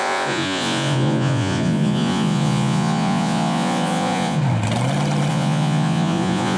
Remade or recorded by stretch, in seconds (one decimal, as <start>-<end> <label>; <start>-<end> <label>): 0.0-4.4 remade; 4.4-5.3 recorded; 5.3-6.6 remade